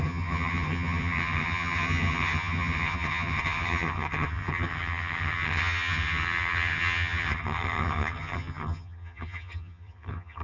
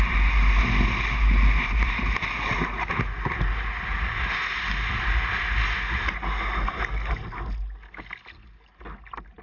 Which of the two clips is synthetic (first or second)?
first